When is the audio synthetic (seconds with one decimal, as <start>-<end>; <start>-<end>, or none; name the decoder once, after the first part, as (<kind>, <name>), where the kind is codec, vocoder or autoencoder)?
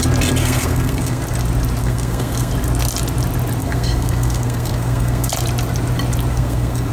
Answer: 0.4-1.2 (codec, SNAC); 1.8-2.5; 3.6-5.3; 6.3-6.9